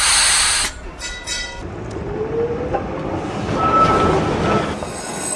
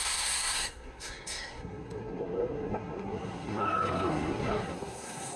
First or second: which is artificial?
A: second